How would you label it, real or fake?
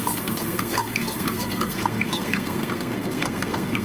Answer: fake